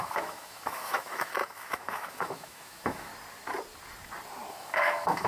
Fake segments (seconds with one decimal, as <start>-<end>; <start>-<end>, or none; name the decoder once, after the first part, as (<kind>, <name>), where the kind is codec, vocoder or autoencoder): 0.0-3.1 (autoencoder, DAC-VAE); 4.5-5.3